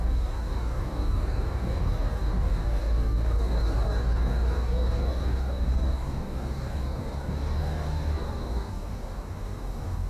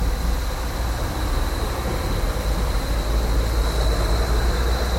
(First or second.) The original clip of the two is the second